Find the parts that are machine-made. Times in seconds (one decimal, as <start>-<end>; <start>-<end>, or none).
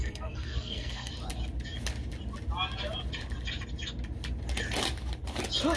0.0-1.1